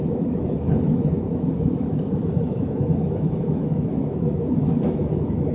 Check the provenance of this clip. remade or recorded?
remade